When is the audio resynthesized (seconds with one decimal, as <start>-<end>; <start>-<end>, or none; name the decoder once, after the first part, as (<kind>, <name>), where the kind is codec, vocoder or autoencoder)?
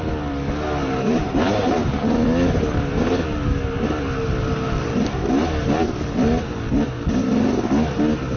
0.8-2.0 (vocoder, BigVGAN v2)